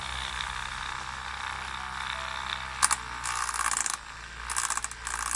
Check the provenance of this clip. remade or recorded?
recorded